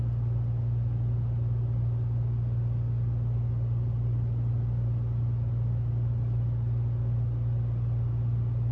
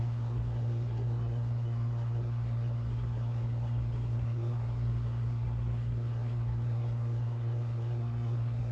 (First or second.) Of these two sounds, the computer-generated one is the second